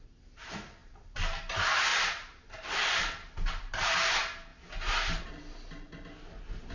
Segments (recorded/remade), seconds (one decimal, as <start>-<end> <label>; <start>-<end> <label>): 0.0-6.7 recorded

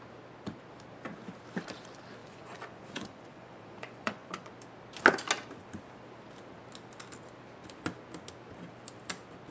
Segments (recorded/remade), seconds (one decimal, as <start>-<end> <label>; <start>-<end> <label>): 0.0-2.2 recorded; 2.2-4.5 remade; 4.5-9.5 recorded

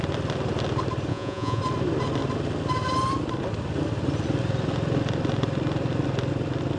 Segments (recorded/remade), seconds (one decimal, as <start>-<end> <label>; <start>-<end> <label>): 0.0-1.1 recorded; 1.1-1.6 remade; 1.6-6.8 recorded